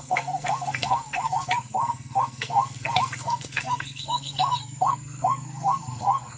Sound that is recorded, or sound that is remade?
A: remade